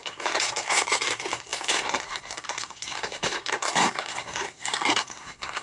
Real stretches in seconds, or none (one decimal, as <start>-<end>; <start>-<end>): none